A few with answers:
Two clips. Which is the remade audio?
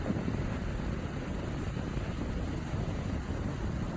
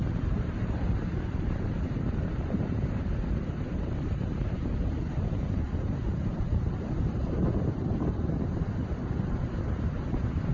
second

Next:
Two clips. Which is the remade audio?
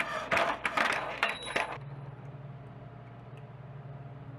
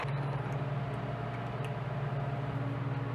first